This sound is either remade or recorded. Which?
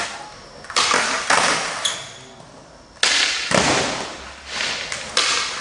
recorded